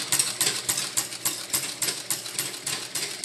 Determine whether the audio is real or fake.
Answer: real